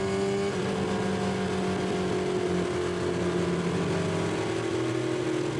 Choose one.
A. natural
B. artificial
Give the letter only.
A